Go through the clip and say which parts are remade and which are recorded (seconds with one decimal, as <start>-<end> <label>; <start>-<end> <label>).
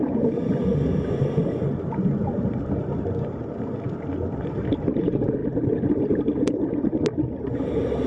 0.0-0.7 remade; 0.7-5.0 recorded; 5.0-5.4 remade; 5.4-8.1 recorded